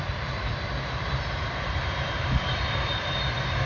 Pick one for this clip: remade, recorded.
remade